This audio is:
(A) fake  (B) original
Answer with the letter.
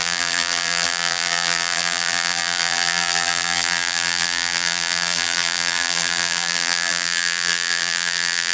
A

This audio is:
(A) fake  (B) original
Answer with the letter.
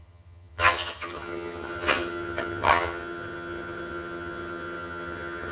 A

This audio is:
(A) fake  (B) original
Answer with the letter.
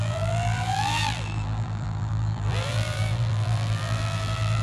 A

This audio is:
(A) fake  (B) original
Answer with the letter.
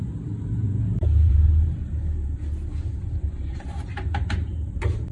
A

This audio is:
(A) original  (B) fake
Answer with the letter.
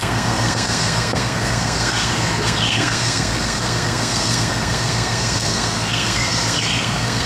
B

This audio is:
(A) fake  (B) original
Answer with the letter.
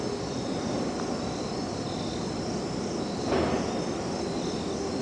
B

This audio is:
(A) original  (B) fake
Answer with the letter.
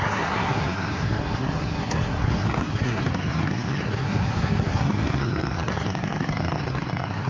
B